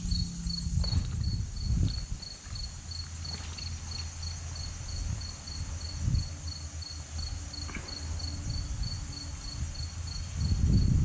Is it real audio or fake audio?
real